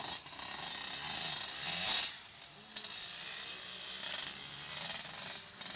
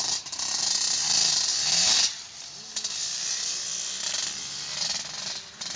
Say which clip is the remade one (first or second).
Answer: second